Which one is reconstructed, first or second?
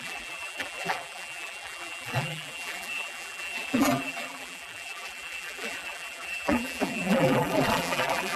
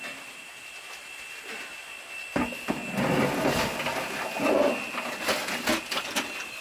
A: first